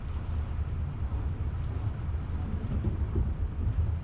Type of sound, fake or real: real